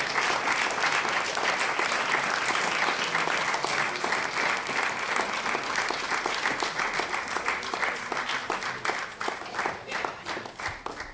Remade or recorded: recorded